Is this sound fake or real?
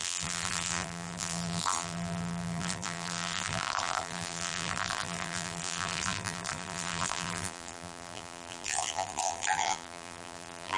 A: fake